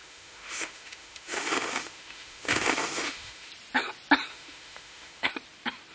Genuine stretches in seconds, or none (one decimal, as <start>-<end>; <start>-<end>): 3.5-4.3; 5.3-5.9